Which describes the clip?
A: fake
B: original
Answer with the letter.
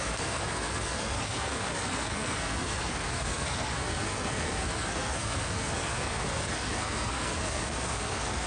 A